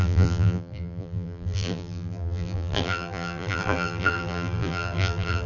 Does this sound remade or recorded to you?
remade